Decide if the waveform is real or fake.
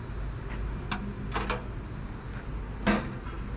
real